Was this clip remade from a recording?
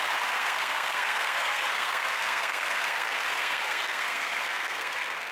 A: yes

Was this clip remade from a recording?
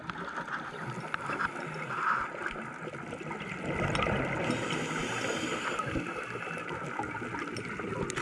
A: no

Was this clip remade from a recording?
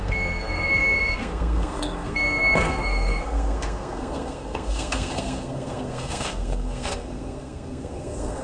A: yes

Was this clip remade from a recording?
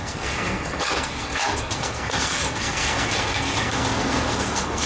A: yes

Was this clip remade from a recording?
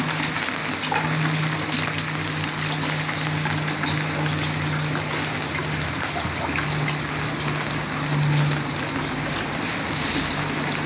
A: no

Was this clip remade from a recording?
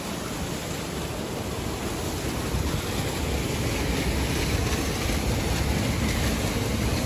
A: no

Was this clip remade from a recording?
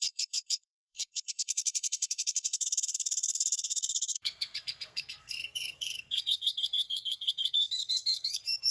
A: yes